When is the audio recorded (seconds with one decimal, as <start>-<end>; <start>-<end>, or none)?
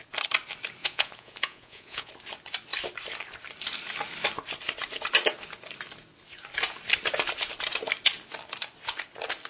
0.0-0.8; 2.1-9.5